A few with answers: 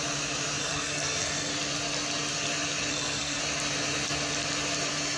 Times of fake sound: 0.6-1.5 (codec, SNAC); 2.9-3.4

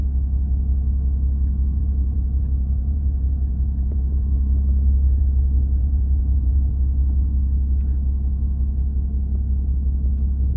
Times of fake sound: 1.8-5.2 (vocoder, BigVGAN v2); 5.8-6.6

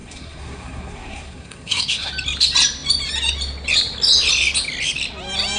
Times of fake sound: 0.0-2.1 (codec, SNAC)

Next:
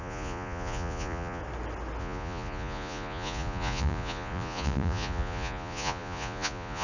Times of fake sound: 0.0-1.4 (vocoder, Vocos); 2.0-6.8

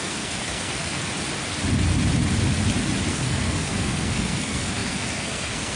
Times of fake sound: 0.0-1.0 (codec, SNAC); 3.1-5.8

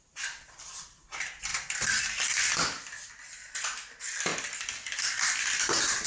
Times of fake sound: none

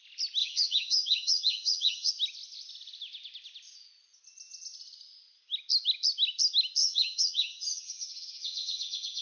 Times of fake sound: 0.4-2.1 (vocoder, HiFi-GAN); 6.8-9.2